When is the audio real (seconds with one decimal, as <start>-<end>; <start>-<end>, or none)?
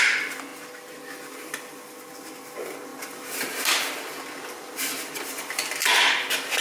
0.0-2.9; 3.8-6.6